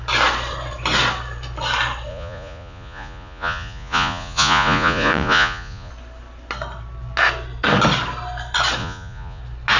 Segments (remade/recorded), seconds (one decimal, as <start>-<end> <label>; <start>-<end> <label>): 0.0-2.1 recorded; 2.1-5.9 remade; 5.9-8.8 recorded; 8.8-9.4 remade; 9.4-9.8 recorded